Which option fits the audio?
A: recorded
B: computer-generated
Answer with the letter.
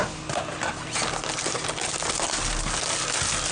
A